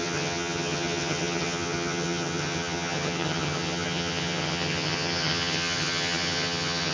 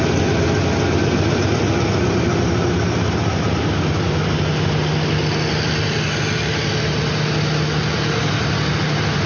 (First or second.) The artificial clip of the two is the first